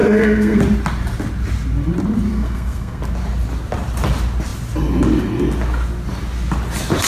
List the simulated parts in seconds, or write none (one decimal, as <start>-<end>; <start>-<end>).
0.0-0.6; 2.3-3.0